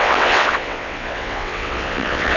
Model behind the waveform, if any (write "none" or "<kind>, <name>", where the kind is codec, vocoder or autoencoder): vocoder, WaveNeXt